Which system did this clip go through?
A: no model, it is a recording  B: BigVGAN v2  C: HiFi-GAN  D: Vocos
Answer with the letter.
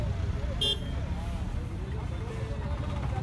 A